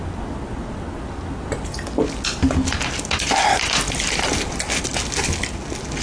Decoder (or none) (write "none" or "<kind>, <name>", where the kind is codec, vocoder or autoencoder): none